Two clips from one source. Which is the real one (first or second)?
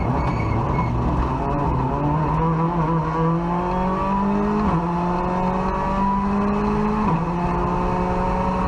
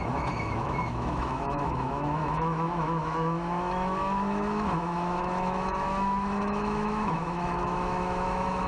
first